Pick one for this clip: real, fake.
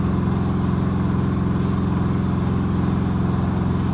real